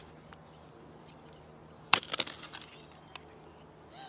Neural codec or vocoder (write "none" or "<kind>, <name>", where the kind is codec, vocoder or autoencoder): none